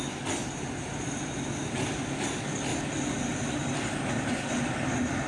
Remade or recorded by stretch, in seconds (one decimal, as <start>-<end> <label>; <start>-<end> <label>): 0.0-5.3 recorded